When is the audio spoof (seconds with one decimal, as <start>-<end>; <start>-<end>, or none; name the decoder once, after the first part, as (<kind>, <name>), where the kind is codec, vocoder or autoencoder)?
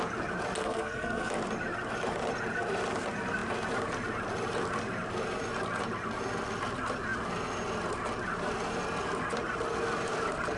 0.6-1.3 (codec, SNAC)